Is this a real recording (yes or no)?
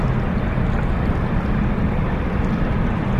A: yes